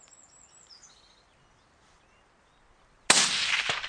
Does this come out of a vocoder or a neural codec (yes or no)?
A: no